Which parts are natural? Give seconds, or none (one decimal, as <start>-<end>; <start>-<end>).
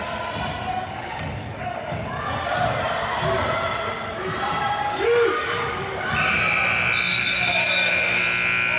0.0-0.7; 2.3-4.8; 6.0-7.1; 8.2-8.8